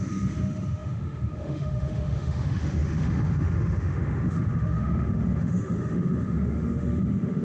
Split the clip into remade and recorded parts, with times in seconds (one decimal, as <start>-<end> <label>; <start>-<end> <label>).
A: 0.0-7.4 remade